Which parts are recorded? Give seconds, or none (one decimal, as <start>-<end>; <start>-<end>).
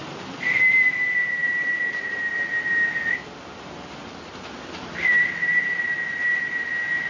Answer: 0.0-7.1